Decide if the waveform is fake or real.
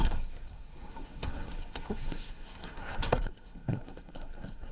fake